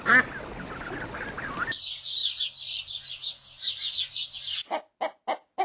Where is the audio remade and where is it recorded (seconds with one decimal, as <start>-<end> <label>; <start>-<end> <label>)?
0.0-5.6 recorded